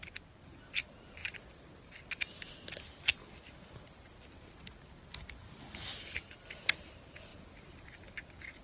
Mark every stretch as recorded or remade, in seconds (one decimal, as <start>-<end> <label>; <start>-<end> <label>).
0.0-8.6 recorded